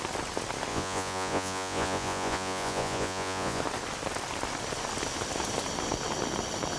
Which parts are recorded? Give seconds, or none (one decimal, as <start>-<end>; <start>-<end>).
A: 0.0-0.7; 3.6-6.8